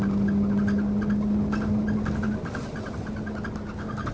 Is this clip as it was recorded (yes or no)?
yes